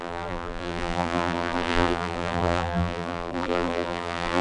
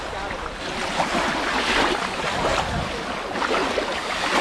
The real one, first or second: second